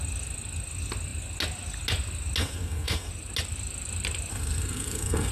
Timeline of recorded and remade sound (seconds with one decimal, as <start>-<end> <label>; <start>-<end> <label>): 0.0-2.4 recorded; 2.4-3.1 remade; 3.1-4.3 recorded; 4.3-5.3 remade